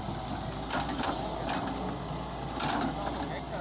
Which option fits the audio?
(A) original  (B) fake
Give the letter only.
A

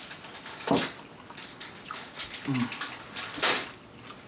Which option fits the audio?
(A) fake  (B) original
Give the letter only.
B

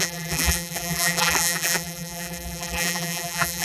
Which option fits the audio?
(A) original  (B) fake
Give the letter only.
B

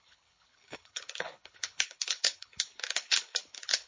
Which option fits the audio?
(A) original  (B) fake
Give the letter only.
B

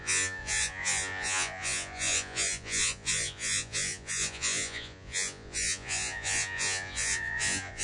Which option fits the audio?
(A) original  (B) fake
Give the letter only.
B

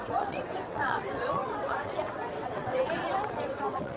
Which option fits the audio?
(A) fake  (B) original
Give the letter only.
A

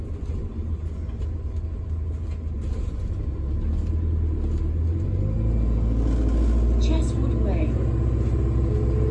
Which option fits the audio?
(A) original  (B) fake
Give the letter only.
A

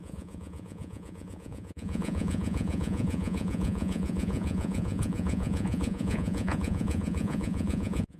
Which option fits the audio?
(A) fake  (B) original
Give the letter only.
A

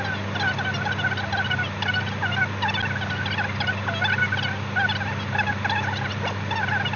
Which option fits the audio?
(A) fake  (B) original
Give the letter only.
B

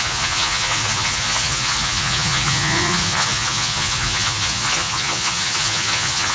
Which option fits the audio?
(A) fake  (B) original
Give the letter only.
A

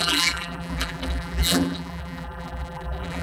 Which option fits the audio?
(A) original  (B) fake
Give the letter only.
B